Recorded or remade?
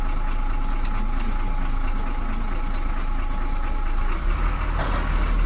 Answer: recorded